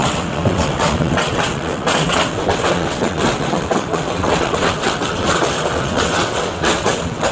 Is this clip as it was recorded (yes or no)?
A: no